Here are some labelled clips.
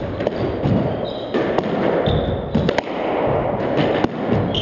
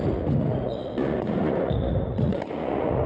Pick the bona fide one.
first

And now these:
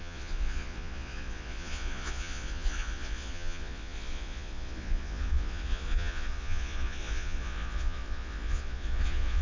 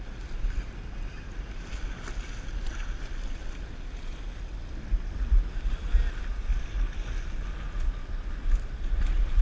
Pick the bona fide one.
second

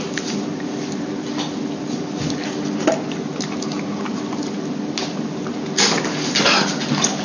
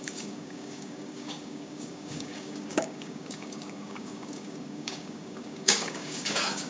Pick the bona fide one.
first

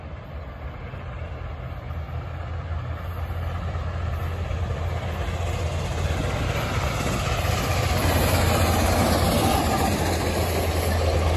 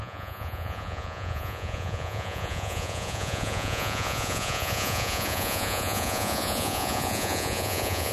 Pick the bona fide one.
first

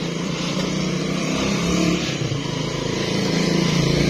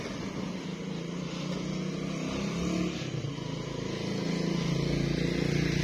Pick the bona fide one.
second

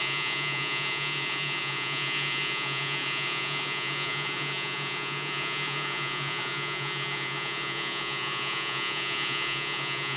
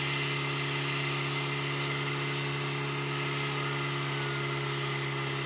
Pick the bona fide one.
second